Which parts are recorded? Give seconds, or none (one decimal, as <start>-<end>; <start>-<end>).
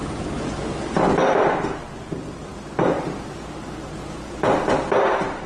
0.0-5.5